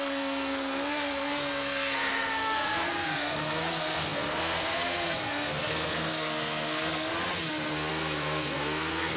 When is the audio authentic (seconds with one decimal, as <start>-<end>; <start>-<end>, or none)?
7.1-7.9